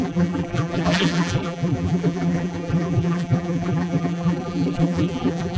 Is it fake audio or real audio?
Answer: fake